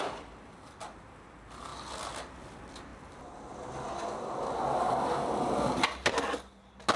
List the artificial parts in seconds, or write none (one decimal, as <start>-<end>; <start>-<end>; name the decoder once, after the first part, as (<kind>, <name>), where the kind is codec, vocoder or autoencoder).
none